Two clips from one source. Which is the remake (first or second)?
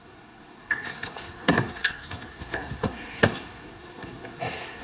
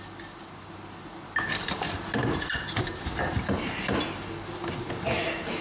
first